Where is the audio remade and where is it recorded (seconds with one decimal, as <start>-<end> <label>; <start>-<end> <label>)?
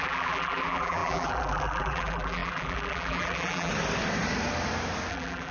0.0-3.7 remade; 3.7-5.1 recorded; 5.1-5.5 remade